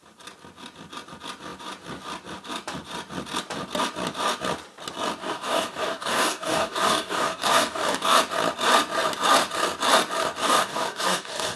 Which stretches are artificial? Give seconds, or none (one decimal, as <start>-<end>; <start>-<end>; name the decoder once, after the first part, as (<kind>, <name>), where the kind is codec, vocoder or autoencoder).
5.2-8.2 (codec, DAC); 10.4-11.6